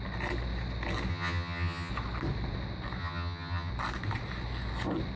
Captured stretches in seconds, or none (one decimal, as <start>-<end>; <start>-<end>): 0.0-1.1; 1.9-3.0; 3.7-5.2